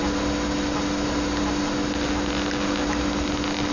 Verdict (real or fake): real